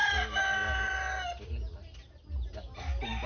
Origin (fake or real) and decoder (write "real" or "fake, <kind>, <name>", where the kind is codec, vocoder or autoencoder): real